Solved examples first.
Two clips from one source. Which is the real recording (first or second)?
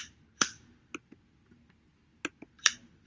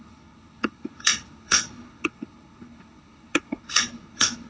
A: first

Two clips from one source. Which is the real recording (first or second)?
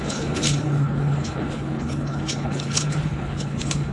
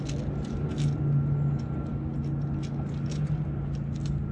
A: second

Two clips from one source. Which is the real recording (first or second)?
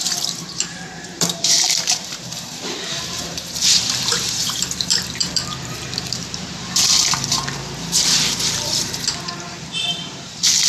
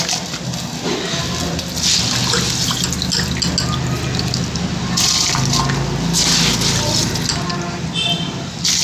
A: second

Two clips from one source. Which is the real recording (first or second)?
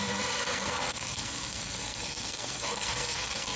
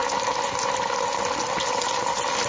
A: second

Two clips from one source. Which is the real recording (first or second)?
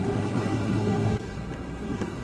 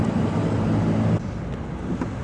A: second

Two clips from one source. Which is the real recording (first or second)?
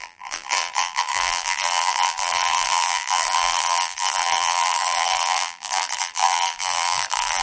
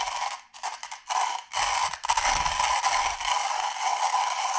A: second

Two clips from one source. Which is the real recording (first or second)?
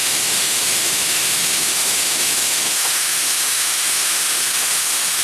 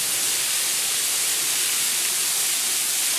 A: second